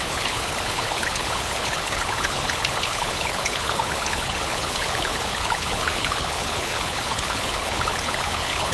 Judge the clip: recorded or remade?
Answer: remade